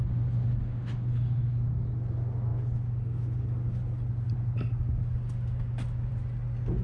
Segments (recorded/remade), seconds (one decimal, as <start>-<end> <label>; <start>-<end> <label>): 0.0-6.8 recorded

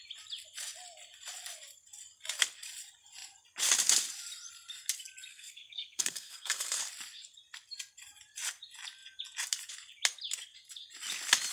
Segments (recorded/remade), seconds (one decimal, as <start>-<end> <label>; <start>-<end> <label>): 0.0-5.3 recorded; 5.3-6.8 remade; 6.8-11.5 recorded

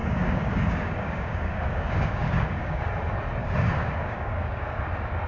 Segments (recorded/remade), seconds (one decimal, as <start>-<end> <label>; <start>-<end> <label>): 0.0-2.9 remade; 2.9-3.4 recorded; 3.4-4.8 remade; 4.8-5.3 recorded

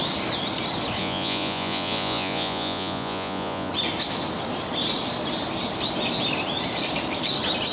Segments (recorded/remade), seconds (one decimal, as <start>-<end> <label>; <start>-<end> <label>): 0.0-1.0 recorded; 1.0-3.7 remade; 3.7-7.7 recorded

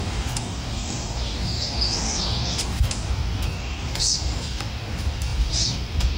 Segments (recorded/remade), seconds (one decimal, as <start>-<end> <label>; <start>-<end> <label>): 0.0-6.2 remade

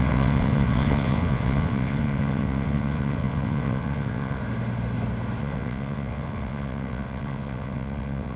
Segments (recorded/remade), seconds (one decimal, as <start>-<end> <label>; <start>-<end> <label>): 0.0-4.4 remade; 4.4-5.4 recorded; 5.4-8.4 remade